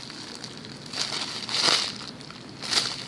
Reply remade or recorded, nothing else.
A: recorded